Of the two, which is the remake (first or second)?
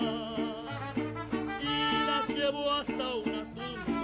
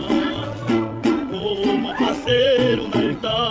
second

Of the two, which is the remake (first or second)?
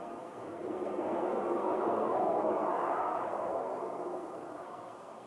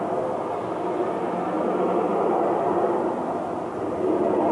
first